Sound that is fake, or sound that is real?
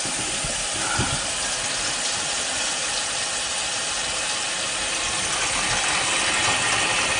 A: real